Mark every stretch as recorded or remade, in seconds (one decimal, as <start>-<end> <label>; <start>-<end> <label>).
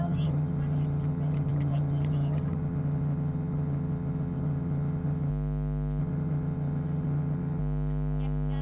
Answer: 0.0-5.3 remade; 5.3-6.0 recorded; 6.0-7.6 remade; 7.6-8.6 recorded